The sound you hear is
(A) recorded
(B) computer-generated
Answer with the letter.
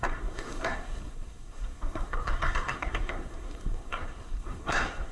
B